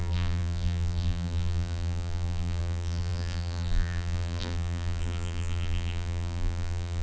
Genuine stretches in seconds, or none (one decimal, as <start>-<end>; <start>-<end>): none